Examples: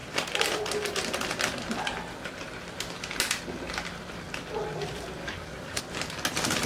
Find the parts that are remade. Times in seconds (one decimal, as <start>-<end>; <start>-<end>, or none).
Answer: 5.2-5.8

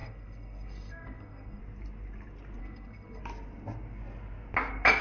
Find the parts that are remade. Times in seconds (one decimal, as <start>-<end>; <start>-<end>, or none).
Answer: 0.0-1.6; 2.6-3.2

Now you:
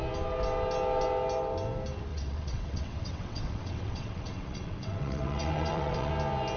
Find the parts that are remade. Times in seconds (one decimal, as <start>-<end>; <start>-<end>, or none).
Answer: 2.1-6.1